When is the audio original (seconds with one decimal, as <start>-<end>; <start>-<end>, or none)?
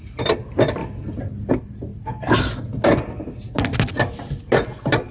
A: 0.0-5.1